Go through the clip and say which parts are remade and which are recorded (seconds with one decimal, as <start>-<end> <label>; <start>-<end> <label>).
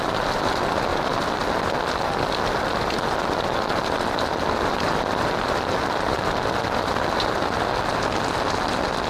0.0-3.2 recorded; 3.2-5.1 remade; 5.1-9.1 recorded